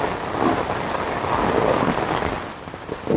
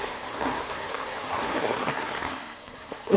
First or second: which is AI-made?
second